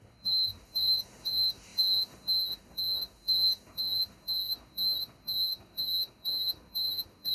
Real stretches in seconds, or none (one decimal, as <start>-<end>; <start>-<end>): none